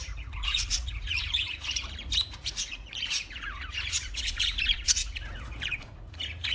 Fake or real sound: fake